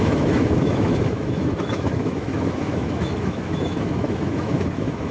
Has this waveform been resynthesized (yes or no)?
yes